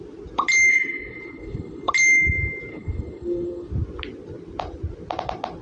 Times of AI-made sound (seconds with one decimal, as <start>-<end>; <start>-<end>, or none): 0.7-1.9; 2.7-3.7